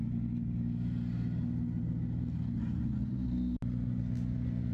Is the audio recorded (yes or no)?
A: yes